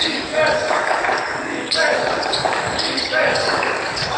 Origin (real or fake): fake